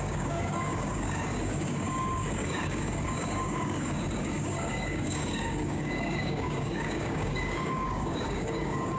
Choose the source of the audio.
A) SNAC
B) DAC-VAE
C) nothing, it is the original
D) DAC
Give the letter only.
D